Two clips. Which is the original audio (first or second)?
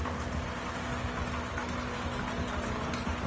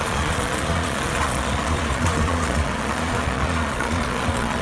first